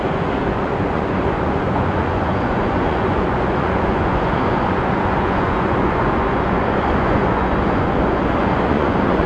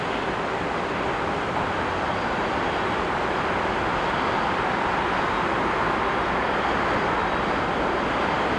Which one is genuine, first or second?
second